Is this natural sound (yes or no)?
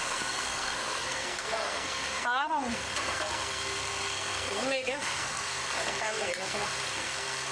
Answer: no